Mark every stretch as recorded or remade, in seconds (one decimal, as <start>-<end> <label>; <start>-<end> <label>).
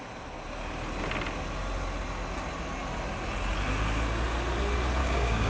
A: 0.0-5.0 recorded; 5.0-5.5 remade